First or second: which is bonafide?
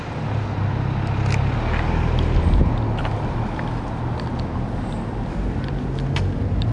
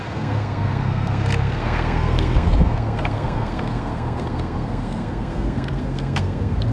first